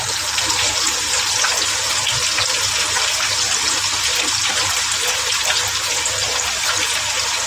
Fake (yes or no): no